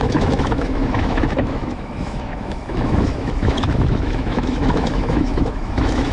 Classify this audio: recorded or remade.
remade